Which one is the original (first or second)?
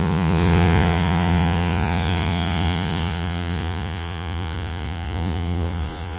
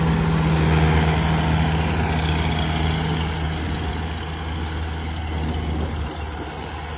second